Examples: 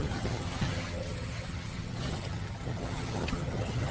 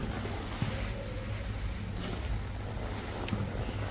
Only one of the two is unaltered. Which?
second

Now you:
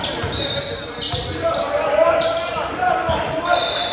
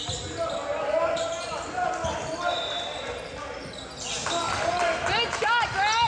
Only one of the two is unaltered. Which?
second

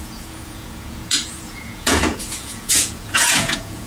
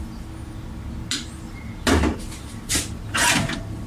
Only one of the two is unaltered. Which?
second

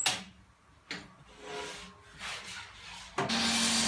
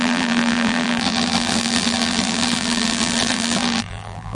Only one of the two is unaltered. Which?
first